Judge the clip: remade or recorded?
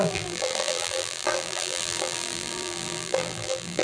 remade